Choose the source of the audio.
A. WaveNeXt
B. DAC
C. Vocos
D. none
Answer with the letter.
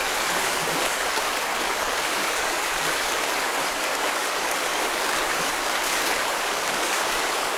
B